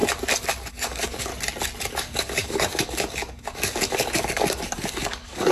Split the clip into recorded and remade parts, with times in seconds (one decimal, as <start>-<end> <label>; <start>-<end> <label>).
0.0-0.7 recorded; 0.7-1.3 remade; 1.3-1.9 recorded; 1.9-5.5 remade

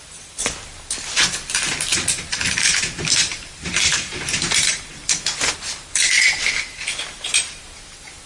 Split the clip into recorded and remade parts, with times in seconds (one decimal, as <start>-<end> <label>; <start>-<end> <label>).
0.0-1.9 recorded; 1.9-2.8 remade; 2.8-3.2 recorded; 3.2-7.6 remade; 7.6-8.3 recorded

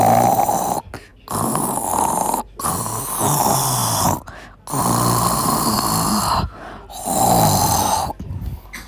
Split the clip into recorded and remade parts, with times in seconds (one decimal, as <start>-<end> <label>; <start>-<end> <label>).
0.0-8.9 recorded

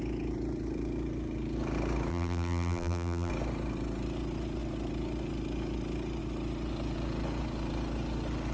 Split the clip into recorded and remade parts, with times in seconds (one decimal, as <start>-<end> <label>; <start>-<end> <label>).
0.0-2.1 recorded; 2.1-3.3 remade; 3.3-8.5 recorded

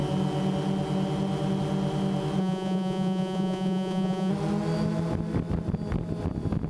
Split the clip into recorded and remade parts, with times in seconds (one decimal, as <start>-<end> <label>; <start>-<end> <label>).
0.0-2.4 recorded; 2.4-4.3 remade; 4.3-6.7 recorded

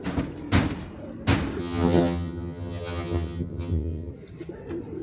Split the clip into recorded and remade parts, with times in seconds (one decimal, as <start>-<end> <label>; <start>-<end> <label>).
0.0-1.6 recorded; 1.6-4.1 remade; 4.1-5.0 recorded